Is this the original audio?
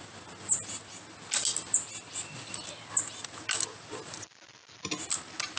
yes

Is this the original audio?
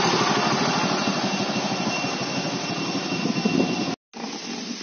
yes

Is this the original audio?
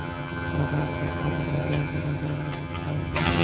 no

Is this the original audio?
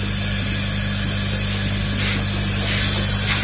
yes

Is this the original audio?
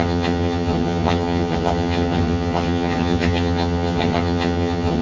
no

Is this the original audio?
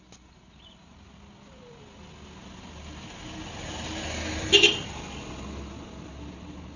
yes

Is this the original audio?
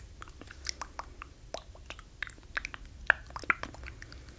yes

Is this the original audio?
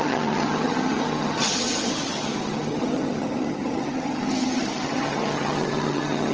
no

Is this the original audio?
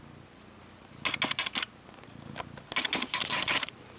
yes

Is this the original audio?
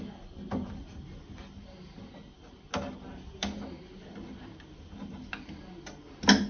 yes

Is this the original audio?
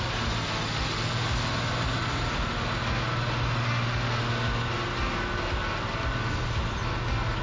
yes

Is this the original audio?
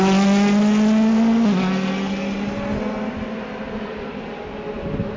yes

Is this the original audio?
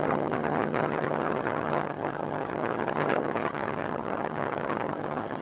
no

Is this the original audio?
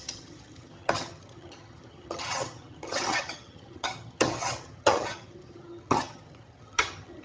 no